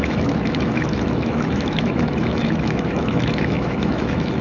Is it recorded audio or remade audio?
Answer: remade